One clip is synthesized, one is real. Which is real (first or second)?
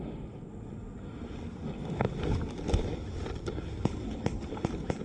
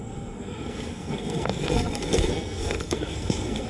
first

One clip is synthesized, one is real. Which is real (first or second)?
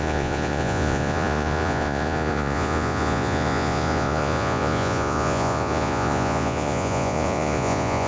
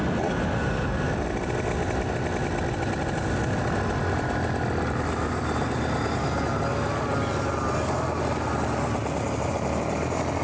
second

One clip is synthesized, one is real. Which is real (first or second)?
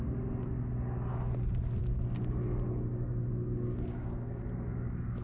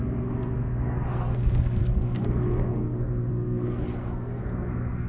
first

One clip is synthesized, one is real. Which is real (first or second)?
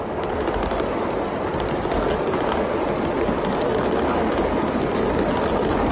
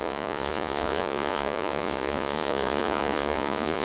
first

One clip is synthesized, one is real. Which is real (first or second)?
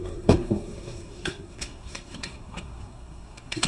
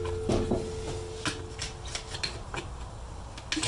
second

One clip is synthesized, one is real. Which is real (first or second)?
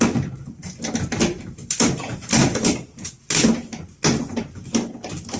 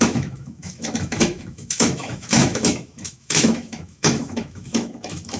first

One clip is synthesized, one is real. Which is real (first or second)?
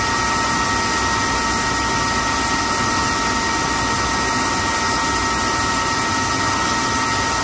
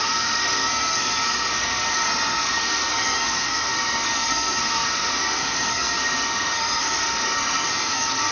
first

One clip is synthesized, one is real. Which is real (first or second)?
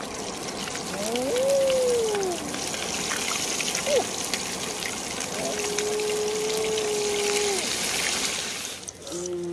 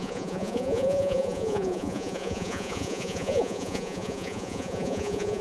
first